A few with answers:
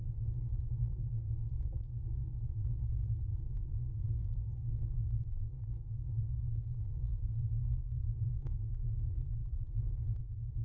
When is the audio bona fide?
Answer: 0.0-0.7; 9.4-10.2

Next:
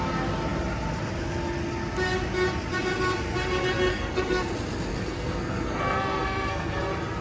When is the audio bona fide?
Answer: 0.0-3.9; 4.5-4.9; 6.8-7.2

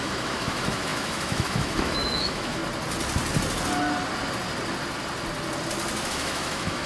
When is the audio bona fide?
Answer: 2.6-6.1